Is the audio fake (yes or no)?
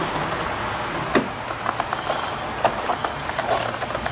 no